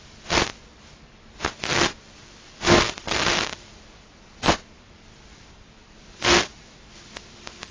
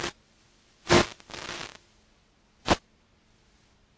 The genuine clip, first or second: second